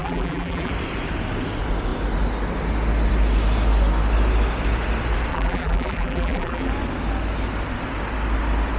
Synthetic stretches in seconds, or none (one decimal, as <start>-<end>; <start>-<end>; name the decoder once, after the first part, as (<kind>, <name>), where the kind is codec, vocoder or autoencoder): 0.0-0.7 (vocoder, BigVGAN v2); 5.3-6.7